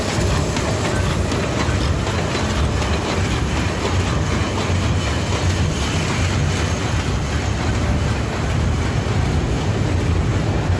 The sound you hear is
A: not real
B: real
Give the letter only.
B